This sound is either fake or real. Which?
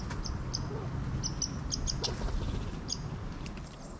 real